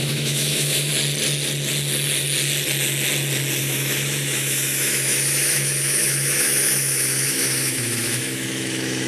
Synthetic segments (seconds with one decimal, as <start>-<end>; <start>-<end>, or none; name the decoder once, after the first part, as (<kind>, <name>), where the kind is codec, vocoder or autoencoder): 0.0-0.9 (autoencoder, DAC-VAE); 3.6-9.1